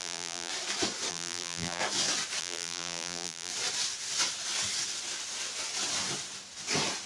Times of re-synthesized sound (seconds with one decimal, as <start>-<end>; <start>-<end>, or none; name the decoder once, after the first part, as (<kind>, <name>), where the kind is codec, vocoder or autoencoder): 0.0-0.5 (vocoder, BigVGAN v2); 1.1-1.8; 2.4-3.5